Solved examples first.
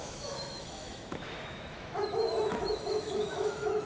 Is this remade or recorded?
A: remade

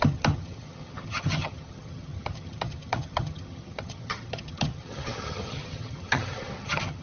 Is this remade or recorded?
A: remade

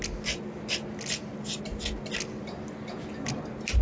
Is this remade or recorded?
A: recorded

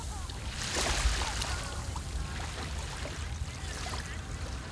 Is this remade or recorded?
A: recorded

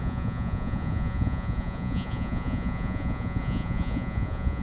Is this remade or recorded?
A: remade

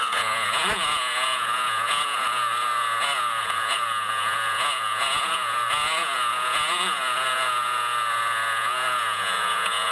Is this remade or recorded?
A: remade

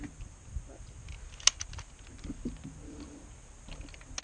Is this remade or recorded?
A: recorded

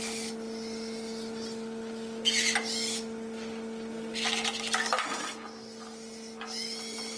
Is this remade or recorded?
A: recorded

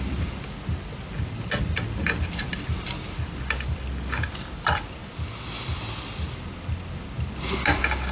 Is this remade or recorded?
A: recorded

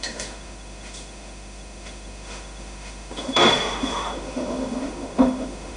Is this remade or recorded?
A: remade